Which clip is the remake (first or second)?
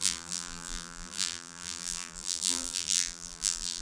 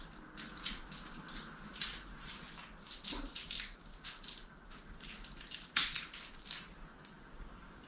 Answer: first